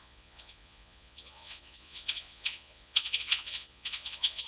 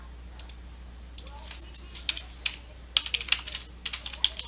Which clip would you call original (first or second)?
second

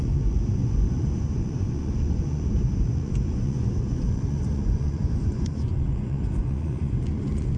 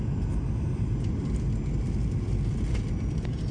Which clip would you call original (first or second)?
second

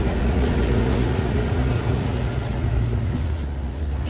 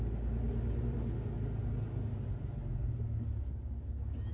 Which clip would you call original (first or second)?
second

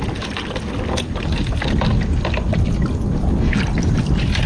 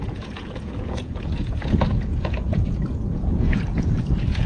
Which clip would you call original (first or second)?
first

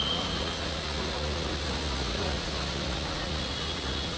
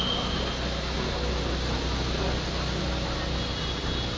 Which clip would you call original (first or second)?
second